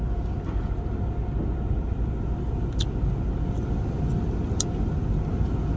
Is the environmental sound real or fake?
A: real